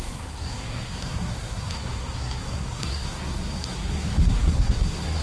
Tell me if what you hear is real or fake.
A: fake